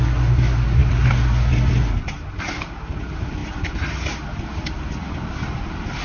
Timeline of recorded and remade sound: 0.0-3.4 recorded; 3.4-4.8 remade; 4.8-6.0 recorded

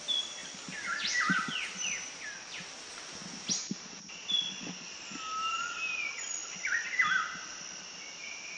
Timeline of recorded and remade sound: 0.0-8.6 recorded

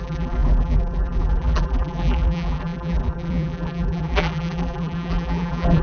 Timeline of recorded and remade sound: 0.0-5.8 remade